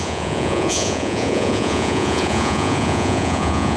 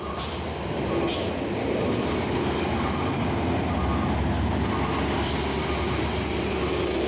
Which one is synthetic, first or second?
first